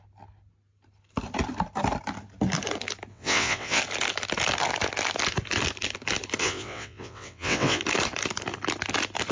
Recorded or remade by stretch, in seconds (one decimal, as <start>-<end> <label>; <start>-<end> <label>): 0.0-3.1 recorded; 3.1-3.8 remade; 3.8-6.4 recorded; 6.4-7.8 remade; 7.8-9.3 recorded

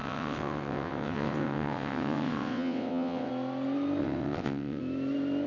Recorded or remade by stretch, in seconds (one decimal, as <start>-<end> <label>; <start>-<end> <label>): 0.0-3.3 remade; 3.3-4.0 recorded; 4.0-4.8 remade; 4.8-5.5 recorded

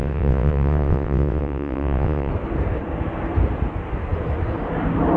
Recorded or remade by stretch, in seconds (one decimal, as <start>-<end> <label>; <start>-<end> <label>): 0.0-2.3 remade; 2.3-5.2 recorded

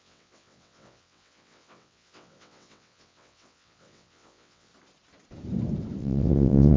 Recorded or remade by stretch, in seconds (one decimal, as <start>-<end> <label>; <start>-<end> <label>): 0.0-4.7 remade; 4.7-6.0 recorded; 6.0-6.8 remade

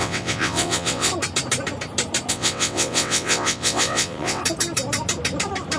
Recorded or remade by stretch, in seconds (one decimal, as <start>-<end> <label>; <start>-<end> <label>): 0.0-1.1 remade; 1.1-2.3 recorded; 2.3-4.4 remade; 4.4-5.8 recorded

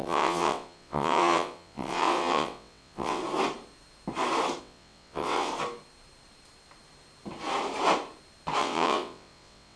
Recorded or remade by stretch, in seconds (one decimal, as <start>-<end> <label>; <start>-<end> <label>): 0.0-3.2 remade; 3.2-4.6 recorded; 4.6-5.5 remade; 5.5-8.6 recorded; 8.6-9.8 remade